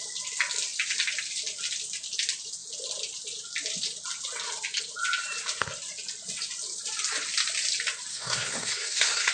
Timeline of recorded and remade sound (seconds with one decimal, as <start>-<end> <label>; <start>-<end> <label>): 0.0-8.1 recorded; 8.1-9.3 remade